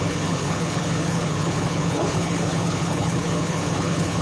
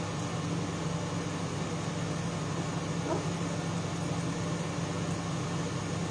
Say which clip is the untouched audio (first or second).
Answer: second